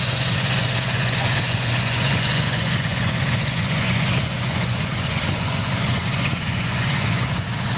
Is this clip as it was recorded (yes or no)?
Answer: no